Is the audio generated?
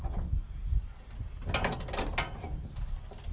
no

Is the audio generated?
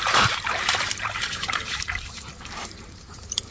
yes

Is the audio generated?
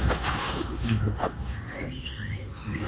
yes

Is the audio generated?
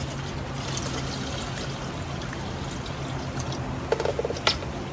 no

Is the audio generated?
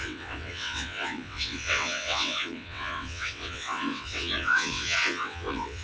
yes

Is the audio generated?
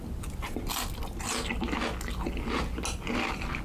no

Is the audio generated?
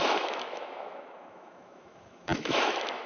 yes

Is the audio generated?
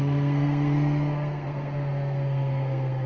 yes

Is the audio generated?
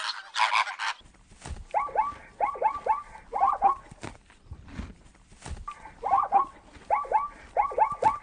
no